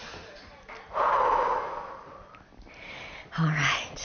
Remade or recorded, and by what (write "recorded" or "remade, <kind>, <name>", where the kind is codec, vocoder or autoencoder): recorded